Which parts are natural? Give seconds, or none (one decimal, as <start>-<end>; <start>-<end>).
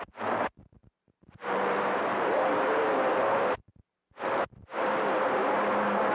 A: 0.0-0.8; 2.9-3.7; 4.3-4.7; 5.4-6.1